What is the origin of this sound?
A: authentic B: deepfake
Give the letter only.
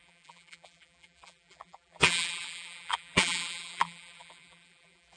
B